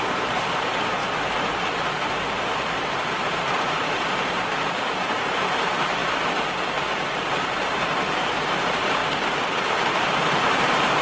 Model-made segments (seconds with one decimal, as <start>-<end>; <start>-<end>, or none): 0.0-1.0; 1.8-9.0; 9.7-11.0